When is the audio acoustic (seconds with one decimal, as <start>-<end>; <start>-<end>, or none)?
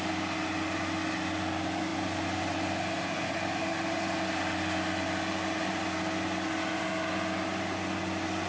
0.0-8.5